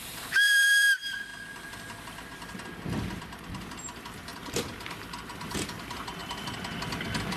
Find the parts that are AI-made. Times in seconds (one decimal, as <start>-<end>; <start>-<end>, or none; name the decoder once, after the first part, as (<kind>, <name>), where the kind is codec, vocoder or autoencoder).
0.0-1.3 (vocoder, BigVGAN v2); 2.3-6.2